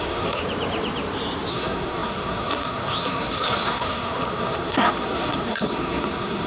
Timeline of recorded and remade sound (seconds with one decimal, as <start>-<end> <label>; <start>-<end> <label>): 0.0-0.4 remade; 0.4-1.5 recorded; 1.5-6.5 remade